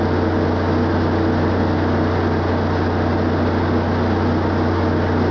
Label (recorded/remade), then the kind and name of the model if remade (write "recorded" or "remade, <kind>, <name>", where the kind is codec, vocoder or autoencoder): recorded